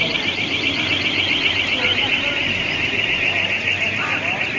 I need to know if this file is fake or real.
real